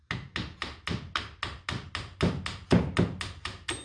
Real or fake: real